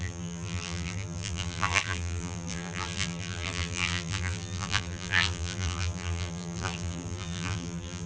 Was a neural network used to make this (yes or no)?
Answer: yes